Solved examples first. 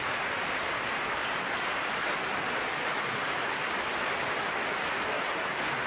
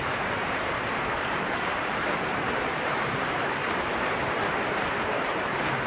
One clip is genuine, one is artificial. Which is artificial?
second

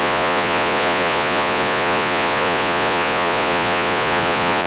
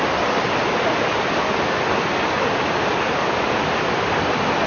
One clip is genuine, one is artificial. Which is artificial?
first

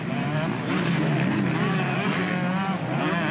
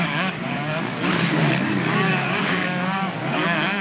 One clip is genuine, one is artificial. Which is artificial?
second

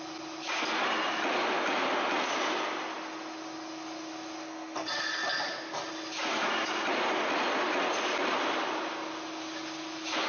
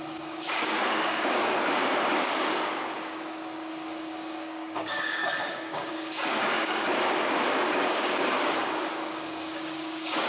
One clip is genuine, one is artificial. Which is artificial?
second